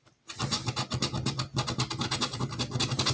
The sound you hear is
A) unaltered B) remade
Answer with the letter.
A